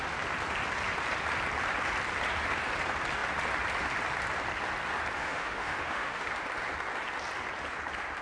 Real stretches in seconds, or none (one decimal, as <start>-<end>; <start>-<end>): 0.0-5.2; 6.3-8.2